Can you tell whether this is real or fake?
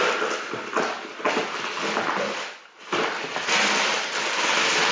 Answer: real